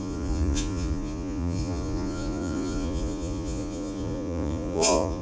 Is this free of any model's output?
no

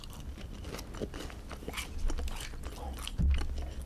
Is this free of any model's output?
yes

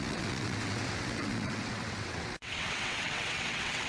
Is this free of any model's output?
no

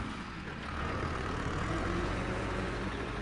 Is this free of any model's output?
no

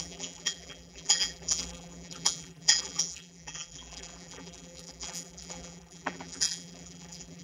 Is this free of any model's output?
no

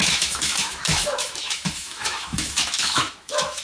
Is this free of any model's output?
no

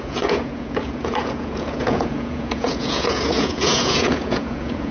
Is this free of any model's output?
no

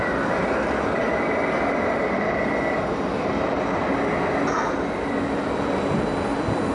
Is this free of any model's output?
yes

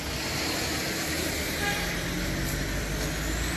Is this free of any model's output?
yes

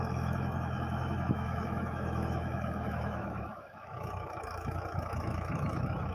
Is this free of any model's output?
no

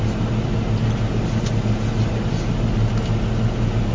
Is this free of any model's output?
yes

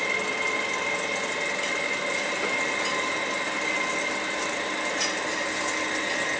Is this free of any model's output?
yes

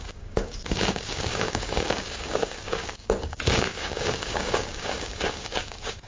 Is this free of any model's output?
no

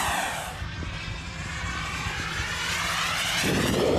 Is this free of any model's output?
no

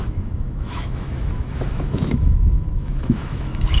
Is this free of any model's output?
no